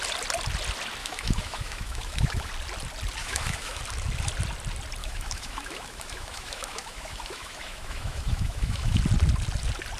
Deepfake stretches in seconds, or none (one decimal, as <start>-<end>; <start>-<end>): 1.0-2.5; 3.2-3.8; 5.0-9.0